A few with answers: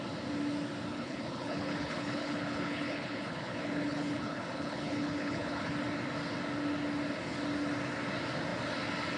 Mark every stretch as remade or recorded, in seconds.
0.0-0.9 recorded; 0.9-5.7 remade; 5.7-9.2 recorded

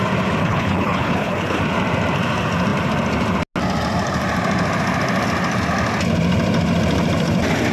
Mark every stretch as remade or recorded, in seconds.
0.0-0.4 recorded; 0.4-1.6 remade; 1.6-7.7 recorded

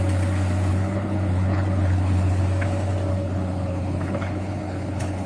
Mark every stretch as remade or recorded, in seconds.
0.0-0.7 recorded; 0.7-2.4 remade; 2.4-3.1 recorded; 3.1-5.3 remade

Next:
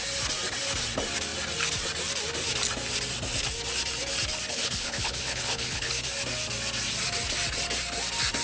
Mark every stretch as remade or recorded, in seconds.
0.0-4.5 recorded; 4.5-5.9 remade; 5.9-8.4 recorded

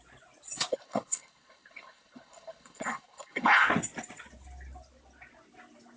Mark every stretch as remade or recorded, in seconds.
0.0-0.7 recorded; 0.7-3.6 remade; 3.6-6.0 recorded

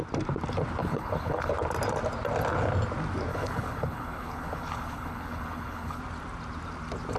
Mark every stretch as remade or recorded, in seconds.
0.0-0.8 recorded; 0.8-1.5 remade; 1.5-3.3 recorded; 3.3-6.0 remade; 6.0-7.2 recorded

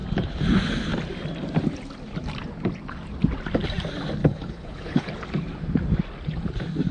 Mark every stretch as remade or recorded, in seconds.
0.0-4.2 recorded; 4.2-5.1 remade; 5.1-6.9 recorded